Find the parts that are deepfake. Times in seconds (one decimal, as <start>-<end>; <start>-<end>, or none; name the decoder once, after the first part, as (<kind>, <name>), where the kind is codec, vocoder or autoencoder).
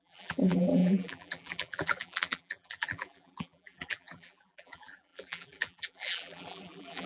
0.0-7.1 (vocoder, BigVGAN v2)